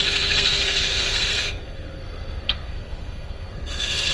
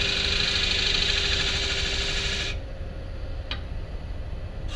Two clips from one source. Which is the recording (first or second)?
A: second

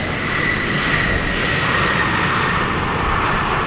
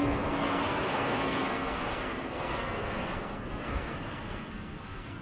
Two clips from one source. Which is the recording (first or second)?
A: first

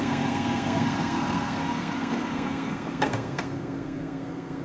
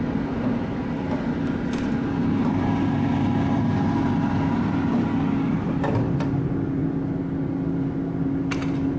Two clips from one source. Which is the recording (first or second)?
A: second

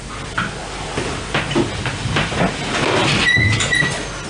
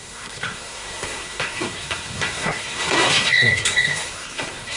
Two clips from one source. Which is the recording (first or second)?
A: first